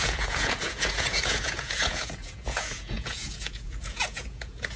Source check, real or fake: fake